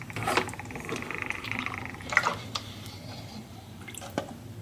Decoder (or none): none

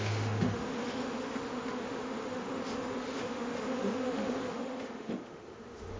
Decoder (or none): autoencoder, DAC-VAE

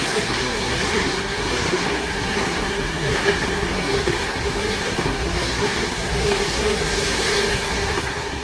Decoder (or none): codec, SNAC